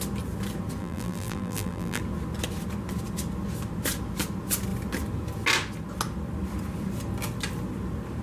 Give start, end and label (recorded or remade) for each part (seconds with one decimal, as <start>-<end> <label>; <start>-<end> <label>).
0.0-0.8 recorded; 0.8-2.0 remade; 2.0-8.2 recorded